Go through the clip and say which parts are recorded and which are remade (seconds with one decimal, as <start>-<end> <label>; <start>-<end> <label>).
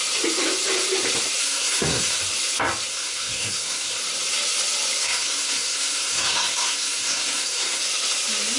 0.0-1.4 recorded; 1.4-2.2 remade; 2.2-2.9 recorded; 2.9-4.0 remade; 4.0-5.0 recorded; 5.0-7.8 remade; 7.8-8.6 recorded